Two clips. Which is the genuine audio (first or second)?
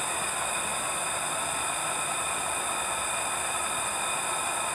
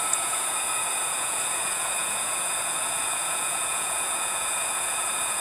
first